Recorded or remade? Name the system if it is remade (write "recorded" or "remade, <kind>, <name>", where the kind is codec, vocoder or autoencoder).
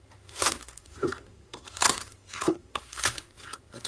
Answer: remade, codec, SNAC